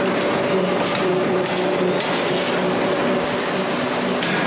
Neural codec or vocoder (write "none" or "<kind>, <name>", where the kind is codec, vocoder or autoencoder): none